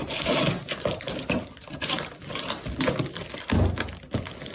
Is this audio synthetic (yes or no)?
no